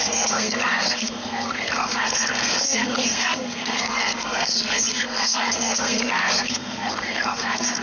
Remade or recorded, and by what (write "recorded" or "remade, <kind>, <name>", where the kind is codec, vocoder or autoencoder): remade, codec, SNAC